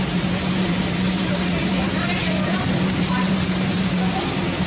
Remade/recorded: remade